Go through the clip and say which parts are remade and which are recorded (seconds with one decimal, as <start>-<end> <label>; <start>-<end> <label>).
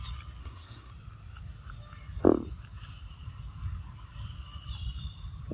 0.0-0.4 recorded; 0.4-0.9 remade; 0.9-5.5 recorded